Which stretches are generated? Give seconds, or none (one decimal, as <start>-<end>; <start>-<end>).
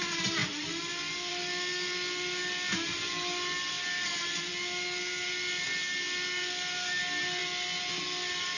none